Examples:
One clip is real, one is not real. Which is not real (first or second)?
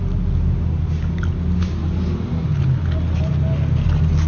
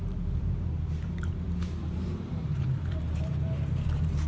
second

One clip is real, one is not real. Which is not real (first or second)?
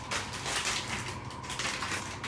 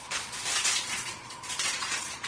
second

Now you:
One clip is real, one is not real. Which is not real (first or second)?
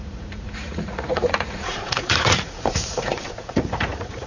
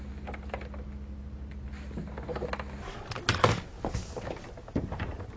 first